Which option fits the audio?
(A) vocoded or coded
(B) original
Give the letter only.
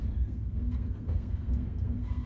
A